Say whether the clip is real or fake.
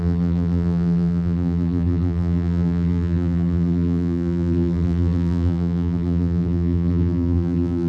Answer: fake